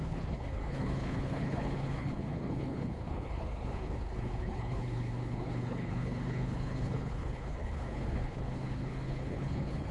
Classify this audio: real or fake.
fake